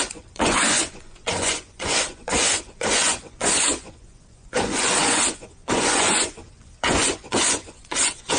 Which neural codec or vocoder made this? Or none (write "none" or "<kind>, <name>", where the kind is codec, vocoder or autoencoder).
vocoder, Vocos